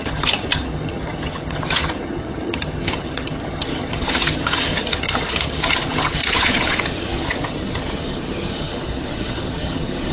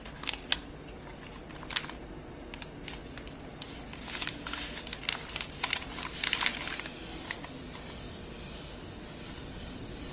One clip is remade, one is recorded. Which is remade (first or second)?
first